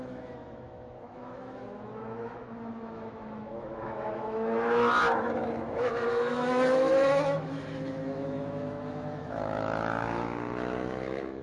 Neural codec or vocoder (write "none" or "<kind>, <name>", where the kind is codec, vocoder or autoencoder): autoencoder, DAC-VAE